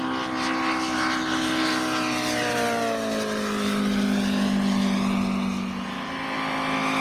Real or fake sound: real